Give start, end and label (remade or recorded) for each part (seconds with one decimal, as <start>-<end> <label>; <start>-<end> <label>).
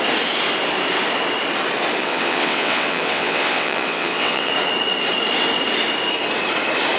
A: 0.0-2.0 recorded; 2.0-4.5 remade; 4.5-7.0 recorded